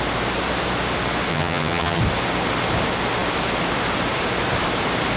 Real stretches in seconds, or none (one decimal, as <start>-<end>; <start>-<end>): 0.0-1.3; 2.0-5.2